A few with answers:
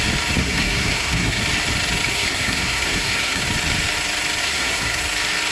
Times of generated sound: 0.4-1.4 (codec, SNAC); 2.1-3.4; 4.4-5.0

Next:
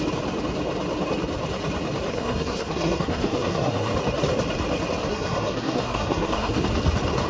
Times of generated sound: 2.1-3.9 (codec, SNAC); 5.1-6.6

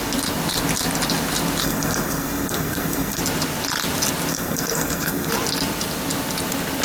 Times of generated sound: 1.6-3.2 (codec, SNAC); 4.3-5.3